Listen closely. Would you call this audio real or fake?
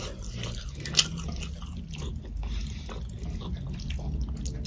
real